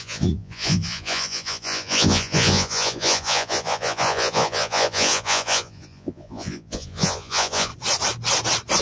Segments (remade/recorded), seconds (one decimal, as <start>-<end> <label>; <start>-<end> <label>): 0.0-7.7 remade; 7.7-8.8 recorded